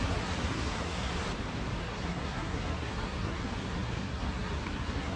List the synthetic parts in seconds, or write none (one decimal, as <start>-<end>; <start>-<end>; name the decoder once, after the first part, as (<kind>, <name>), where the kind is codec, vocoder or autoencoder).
0.0-1.1 (codec, SNAC); 1.8-5.2